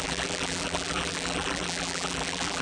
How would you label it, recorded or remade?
remade